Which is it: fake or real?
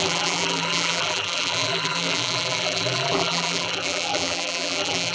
fake